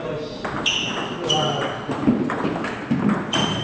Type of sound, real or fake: real